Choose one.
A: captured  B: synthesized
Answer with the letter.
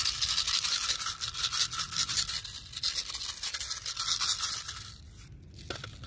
A